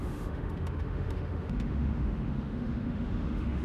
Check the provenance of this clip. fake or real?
fake